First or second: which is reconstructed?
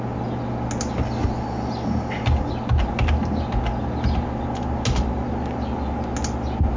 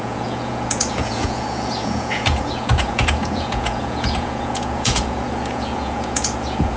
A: second